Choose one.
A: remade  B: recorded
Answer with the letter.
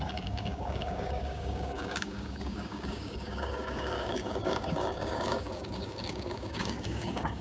A